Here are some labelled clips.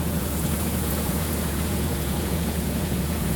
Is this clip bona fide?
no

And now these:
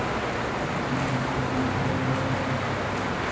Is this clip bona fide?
yes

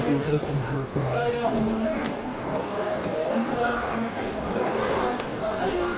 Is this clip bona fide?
no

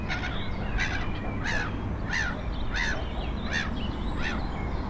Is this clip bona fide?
yes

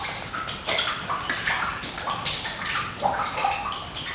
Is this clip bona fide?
yes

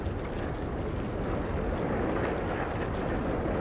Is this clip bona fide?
yes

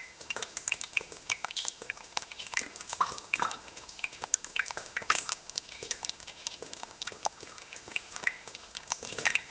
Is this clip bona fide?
no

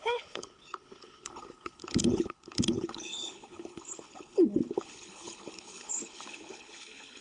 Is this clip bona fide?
no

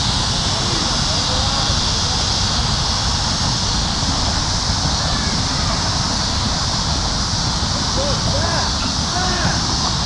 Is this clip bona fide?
yes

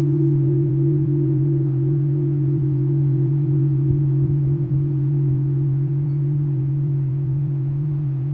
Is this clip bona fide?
no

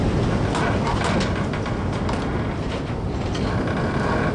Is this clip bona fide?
yes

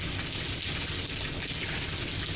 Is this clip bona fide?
yes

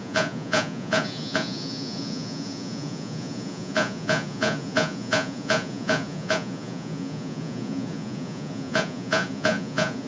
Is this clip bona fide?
no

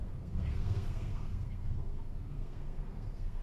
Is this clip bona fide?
no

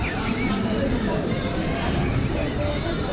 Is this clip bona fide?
yes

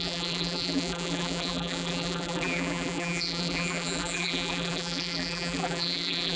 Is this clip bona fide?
no